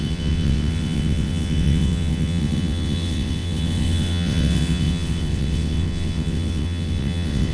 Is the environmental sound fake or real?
fake